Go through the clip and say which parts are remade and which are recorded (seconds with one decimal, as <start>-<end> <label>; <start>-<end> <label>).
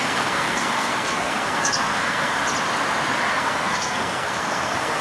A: 0.0-2.4 remade; 2.4-3.3 recorded; 3.3-5.0 remade